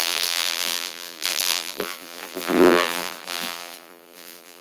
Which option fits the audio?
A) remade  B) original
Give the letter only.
A